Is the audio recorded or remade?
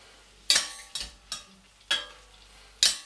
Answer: recorded